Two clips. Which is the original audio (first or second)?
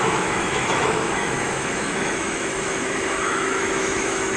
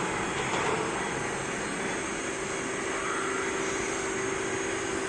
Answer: second